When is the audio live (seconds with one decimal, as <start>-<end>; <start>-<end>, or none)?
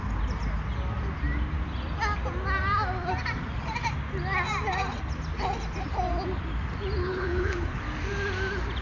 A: 0.0-7.0; 7.8-8.8